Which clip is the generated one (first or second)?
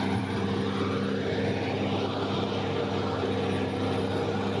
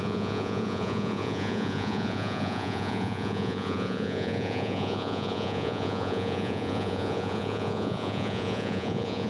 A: second